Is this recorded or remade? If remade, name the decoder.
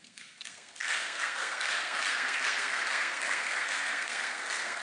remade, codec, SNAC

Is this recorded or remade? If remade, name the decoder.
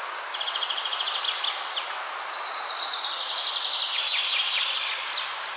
recorded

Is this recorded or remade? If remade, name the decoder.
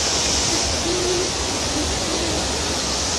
remade, vocoder, Vocos